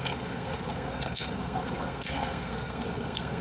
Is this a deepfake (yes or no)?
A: yes